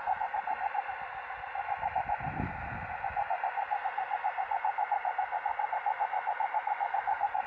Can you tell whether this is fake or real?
real